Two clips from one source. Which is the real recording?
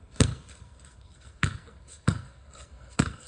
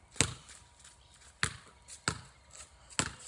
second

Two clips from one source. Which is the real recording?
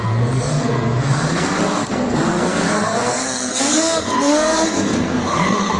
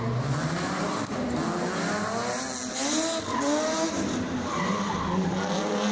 second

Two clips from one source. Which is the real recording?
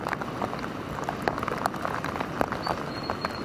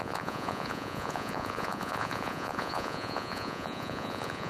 first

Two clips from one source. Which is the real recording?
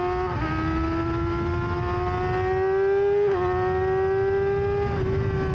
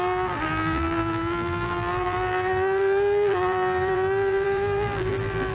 first